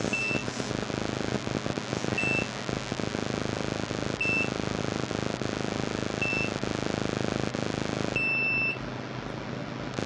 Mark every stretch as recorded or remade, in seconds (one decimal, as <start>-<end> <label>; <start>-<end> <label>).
0.0-10.1 recorded